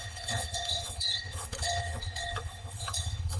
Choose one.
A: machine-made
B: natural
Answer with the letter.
A